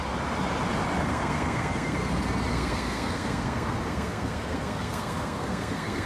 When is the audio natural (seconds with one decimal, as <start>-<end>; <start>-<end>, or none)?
0.0-1.1; 2.1-2.5